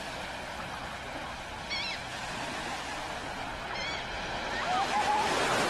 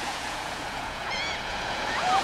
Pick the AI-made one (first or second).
second